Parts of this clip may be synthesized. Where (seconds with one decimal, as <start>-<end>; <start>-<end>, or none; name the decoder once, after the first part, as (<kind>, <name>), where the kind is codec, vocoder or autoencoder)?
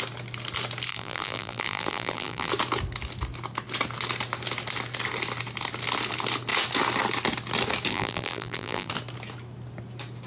0.9-2.5 (vocoder, BigVGAN v2); 7.9-8.9